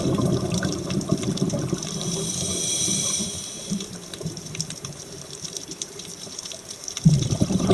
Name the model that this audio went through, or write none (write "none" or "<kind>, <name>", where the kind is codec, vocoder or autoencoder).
vocoder, BigVGAN v2